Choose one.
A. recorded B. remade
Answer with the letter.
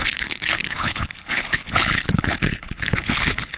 B